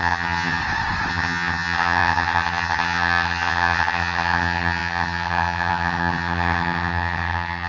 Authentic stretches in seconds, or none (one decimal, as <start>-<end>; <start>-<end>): 0.6-1.1